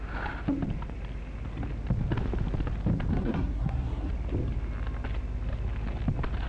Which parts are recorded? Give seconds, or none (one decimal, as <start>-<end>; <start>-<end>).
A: 0.0-3.1; 4.1-6.5